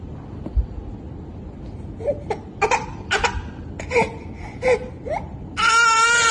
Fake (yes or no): no